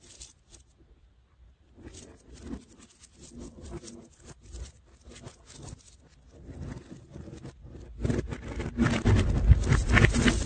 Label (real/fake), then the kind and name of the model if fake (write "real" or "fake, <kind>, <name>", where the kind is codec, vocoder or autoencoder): real